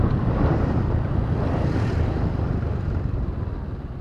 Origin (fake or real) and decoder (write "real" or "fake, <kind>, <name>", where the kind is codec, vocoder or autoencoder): real